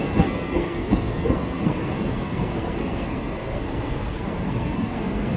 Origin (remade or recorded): remade